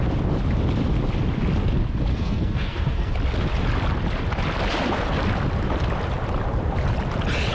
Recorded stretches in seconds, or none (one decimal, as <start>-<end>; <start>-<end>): 0.0-2.1; 3.1-7.5